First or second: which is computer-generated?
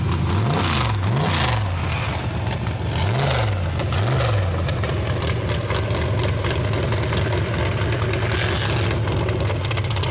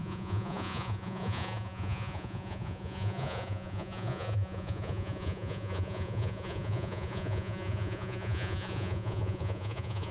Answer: second